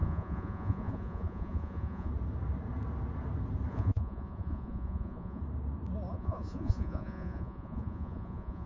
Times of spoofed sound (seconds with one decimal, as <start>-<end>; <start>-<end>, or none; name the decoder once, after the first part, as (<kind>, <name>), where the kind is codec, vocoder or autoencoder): 0.0-2.1 (vocoder, Vocos); 3.7-5.4; 6.1-8.7